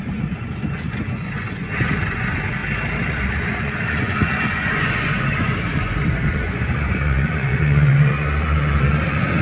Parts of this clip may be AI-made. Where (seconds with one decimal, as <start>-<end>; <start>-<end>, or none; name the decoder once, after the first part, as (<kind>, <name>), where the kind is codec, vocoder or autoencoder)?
0.0-2.6 (vocoder, Vocos); 3.1-9.4